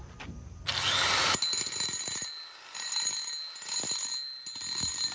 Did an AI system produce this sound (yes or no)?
no